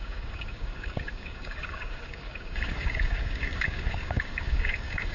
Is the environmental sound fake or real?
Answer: fake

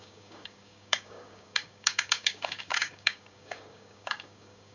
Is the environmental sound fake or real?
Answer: fake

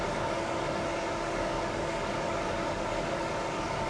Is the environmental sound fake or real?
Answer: fake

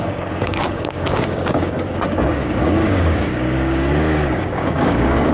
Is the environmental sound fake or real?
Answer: fake